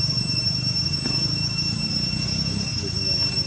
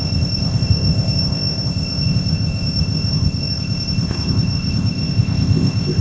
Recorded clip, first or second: first